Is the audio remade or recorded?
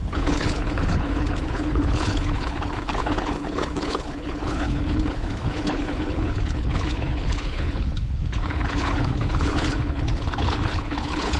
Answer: remade